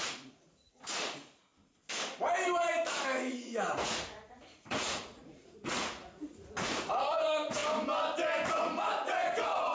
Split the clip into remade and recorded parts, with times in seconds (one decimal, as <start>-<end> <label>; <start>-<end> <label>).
0.0-1.5 remade; 1.5-3.2 recorded; 3.2-7.6 remade; 7.6-8.5 recorded; 8.5-9.7 remade